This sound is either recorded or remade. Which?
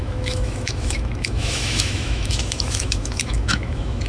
remade